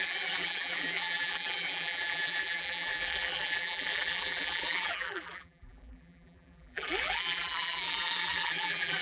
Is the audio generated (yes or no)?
yes